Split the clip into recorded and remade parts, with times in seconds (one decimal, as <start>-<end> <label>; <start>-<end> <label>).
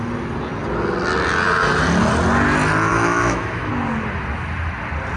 0.0-2.9 recorded; 2.9-3.7 remade; 3.7-5.2 recorded